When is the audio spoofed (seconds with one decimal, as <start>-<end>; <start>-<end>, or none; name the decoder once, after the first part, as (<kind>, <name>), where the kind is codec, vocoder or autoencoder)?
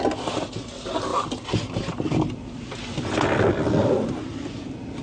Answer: none